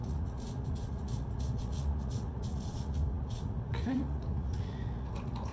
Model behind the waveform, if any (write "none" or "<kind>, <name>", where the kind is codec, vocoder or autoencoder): vocoder, Vocos